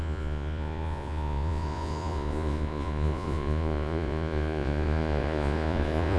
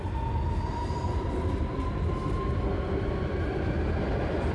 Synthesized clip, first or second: first